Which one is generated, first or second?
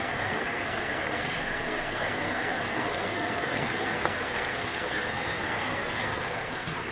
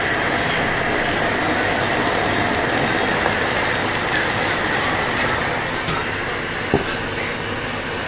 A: first